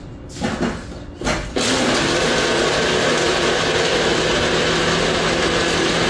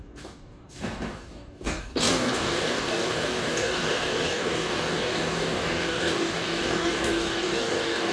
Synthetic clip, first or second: second